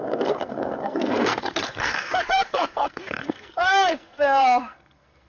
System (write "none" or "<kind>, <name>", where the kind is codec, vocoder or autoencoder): codec, SNAC